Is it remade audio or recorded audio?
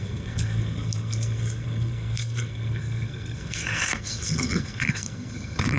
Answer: remade